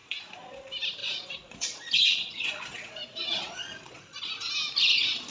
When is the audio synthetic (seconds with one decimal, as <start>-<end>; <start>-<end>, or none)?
0.0-0.6; 1.0-4.2